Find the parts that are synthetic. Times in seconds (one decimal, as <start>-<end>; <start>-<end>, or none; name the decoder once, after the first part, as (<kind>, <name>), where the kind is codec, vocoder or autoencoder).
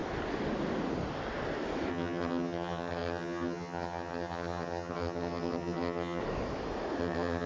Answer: 1.9-6.2 (vocoder, HiFi-GAN); 7.0-7.5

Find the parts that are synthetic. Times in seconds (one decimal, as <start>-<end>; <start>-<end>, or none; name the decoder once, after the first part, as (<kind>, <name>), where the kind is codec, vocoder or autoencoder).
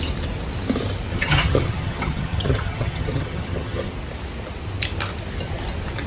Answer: 1.1-3.9 (vocoder, HiFi-GAN)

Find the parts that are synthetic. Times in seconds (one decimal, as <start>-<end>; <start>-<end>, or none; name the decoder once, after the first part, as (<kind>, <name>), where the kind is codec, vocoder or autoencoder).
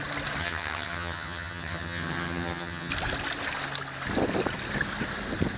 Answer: 0.4-2.9 (vocoder, HiFi-GAN)